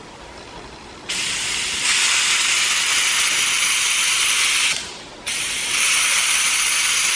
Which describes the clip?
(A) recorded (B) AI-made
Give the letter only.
A